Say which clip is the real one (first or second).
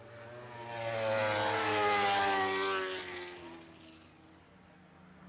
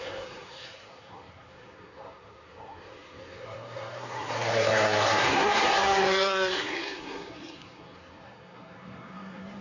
first